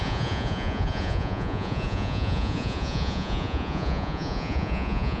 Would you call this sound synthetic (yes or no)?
yes